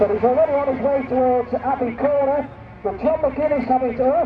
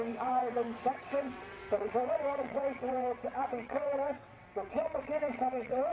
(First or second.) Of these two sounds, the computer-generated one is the second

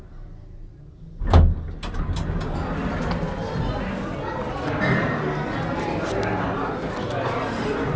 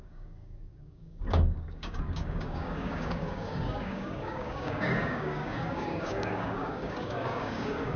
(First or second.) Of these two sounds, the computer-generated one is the second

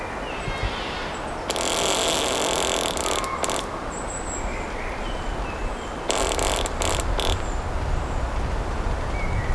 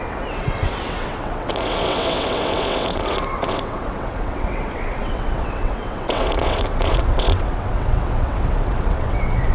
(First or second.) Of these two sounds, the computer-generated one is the second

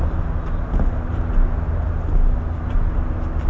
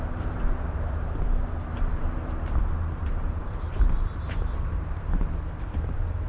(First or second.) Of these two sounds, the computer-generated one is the second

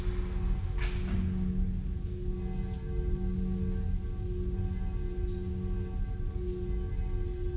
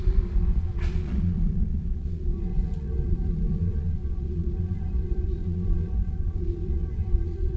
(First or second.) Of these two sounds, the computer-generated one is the second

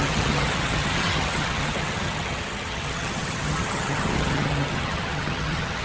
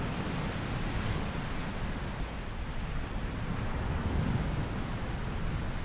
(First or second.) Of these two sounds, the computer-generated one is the first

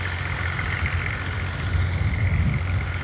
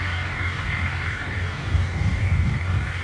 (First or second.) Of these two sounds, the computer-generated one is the second